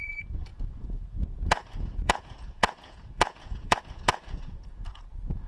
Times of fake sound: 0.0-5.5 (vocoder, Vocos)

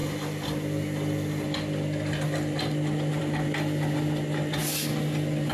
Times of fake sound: none

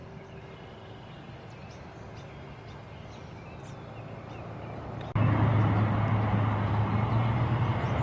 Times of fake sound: none